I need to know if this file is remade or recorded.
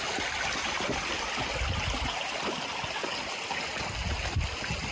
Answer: recorded